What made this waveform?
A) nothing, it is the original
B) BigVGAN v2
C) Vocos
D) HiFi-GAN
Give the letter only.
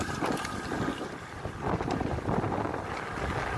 A